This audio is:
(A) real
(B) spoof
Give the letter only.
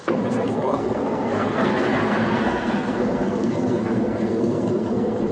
B